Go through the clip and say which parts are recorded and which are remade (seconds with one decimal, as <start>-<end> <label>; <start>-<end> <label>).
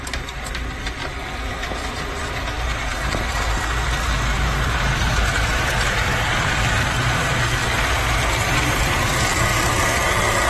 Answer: 0.0-1.0 remade; 1.0-1.9 recorded; 1.9-7.6 remade; 7.6-8.3 recorded; 8.3-9.5 remade; 9.5-10.5 recorded